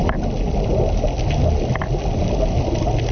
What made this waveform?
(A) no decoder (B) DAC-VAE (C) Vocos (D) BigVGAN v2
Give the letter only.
A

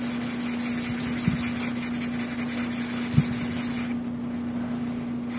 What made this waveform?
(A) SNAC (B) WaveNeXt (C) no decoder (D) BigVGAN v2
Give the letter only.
C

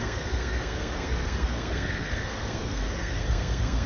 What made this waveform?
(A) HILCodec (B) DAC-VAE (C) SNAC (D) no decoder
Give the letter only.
C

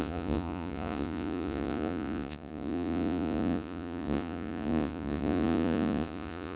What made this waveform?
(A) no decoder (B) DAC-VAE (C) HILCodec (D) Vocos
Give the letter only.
D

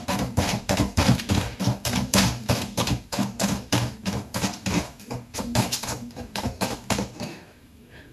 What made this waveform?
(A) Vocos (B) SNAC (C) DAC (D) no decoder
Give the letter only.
C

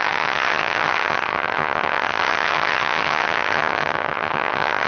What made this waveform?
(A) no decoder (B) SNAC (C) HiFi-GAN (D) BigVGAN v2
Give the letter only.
C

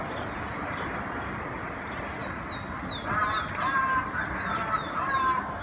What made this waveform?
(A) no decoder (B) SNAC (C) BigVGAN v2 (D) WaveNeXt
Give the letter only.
A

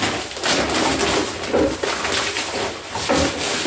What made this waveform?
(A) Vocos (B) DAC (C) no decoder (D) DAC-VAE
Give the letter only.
C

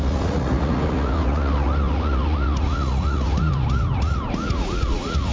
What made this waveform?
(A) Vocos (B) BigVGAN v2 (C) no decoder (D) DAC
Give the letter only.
A